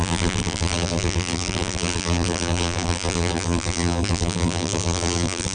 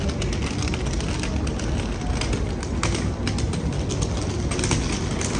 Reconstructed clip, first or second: first